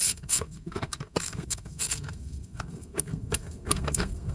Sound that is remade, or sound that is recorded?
remade